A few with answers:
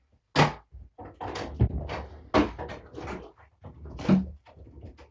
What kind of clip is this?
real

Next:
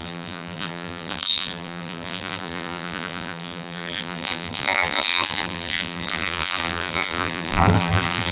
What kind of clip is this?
fake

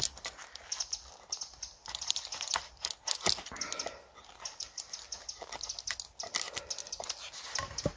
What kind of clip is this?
real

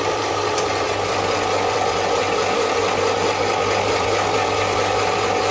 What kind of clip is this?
fake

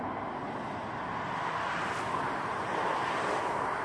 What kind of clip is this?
real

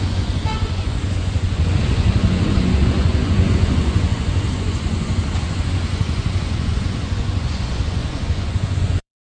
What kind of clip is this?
fake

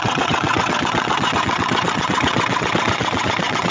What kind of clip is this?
fake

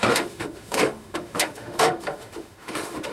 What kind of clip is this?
fake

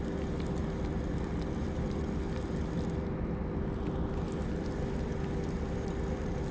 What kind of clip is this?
real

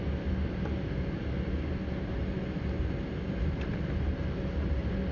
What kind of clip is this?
real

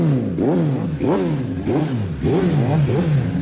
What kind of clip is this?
real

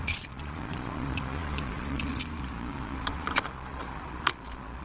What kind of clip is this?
fake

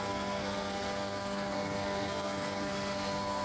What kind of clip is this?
fake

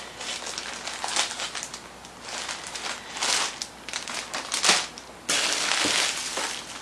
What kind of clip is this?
real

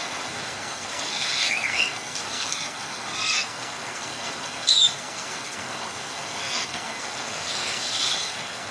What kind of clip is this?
fake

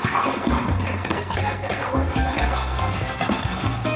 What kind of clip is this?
fake